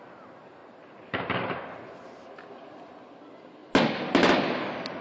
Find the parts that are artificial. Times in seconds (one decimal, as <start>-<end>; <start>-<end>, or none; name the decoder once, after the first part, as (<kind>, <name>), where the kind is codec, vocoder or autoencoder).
none